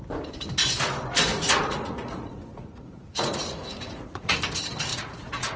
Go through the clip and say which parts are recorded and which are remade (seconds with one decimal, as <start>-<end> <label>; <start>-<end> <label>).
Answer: 0.0-1.3 recorded; 1.3-4.4 remade; 4.4-4.9 recorded; 4.9-5.6 remade